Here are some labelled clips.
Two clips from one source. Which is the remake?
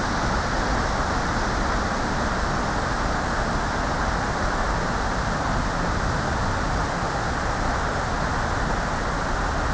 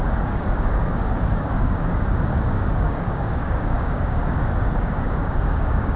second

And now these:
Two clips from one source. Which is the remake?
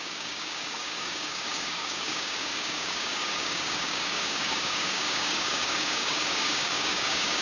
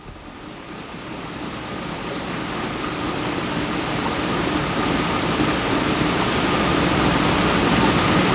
first